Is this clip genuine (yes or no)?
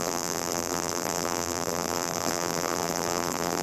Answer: no